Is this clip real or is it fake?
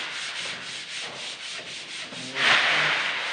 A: real